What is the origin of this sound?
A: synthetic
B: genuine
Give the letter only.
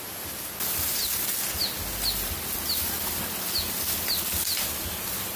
B